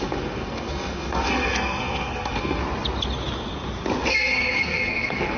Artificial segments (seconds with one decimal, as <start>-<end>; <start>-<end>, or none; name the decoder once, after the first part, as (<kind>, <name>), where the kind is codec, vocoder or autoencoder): 0.0-2.6 (codec, SNAC); 4.1-5.4